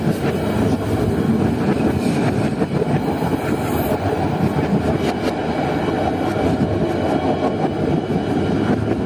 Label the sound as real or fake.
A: real